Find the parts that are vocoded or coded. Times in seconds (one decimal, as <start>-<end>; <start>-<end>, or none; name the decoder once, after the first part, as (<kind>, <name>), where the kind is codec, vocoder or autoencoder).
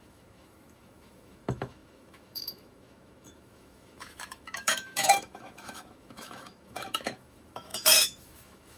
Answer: 0.0-8.8 (autoencoder, DAC-VAE)